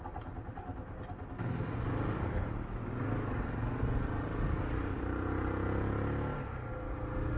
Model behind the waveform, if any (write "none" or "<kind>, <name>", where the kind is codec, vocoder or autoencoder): none